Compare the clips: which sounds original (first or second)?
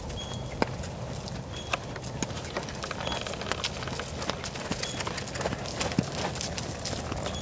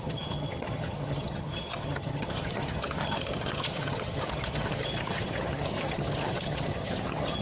first